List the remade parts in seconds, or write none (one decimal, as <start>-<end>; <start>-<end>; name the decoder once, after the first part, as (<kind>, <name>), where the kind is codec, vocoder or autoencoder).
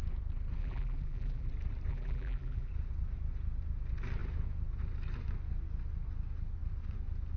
0.6-1.5 (vocoder, BigVGAN v2); 1.9-2.7